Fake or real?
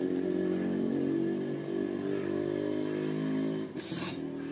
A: real